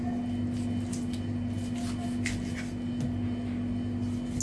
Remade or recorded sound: recorded